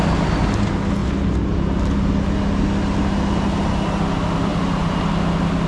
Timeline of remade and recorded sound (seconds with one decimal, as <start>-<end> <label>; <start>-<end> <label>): 0.0-4.5 recorded; 4.5-5.1 remade; 5.1-5.7 recorded